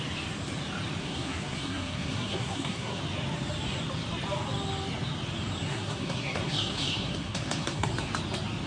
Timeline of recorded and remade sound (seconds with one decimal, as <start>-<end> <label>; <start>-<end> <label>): 0.0-1.0 recorded; 1.0-3.0 remade; 3.0-5.7 recorded; 5.7-7.9 remade; 7.9-8.7 recorded